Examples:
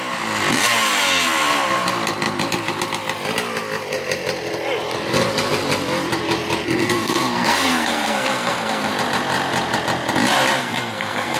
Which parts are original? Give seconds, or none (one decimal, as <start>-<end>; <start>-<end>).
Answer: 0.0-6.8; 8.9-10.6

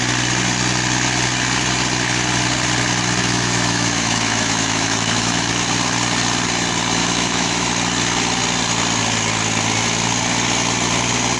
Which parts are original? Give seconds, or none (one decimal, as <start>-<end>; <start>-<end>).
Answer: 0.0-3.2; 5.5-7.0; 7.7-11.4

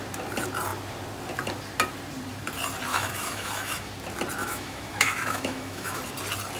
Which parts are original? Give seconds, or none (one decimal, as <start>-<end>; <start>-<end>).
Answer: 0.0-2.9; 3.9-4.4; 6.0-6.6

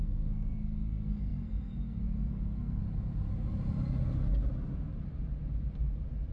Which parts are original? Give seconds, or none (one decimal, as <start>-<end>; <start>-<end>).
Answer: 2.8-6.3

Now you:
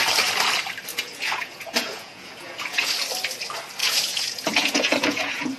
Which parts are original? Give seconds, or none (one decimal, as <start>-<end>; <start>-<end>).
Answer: 0.0-0.9; 2.9-3.8